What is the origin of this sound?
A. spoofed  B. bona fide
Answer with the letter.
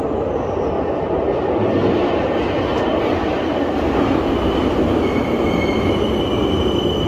B